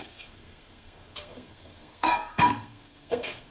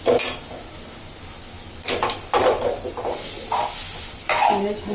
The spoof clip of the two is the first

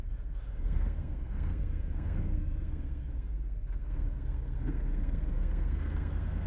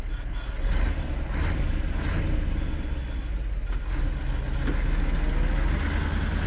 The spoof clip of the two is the first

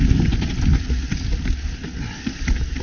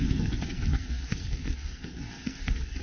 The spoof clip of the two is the second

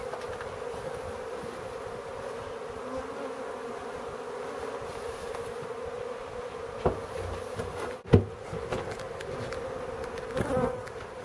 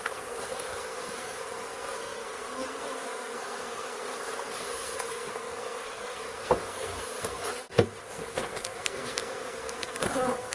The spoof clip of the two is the second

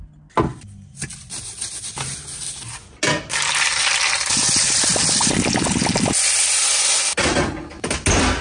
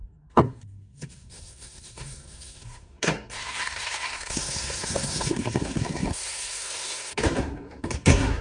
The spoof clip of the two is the second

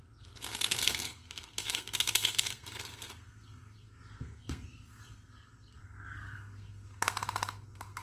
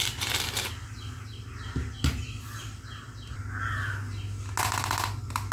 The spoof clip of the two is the first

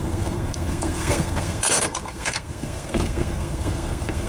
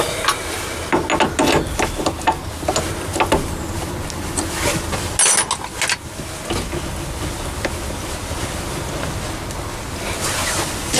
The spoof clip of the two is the first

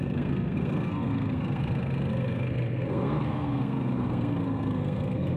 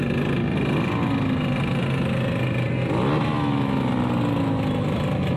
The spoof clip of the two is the first